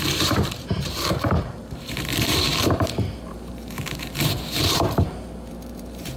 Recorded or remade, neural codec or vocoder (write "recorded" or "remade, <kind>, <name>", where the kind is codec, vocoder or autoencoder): remade, vocoder, BigVGAN v2